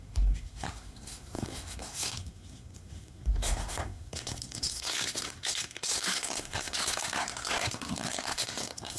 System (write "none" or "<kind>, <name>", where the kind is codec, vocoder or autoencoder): codec, SNAC